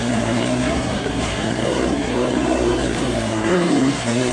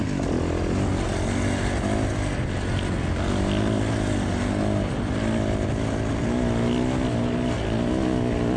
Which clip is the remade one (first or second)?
first